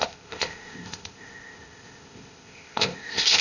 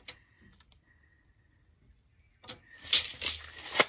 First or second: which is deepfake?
first